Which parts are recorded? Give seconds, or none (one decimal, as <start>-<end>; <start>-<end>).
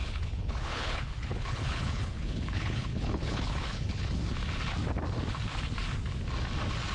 4.1-6.9